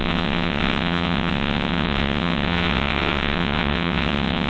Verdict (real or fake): fake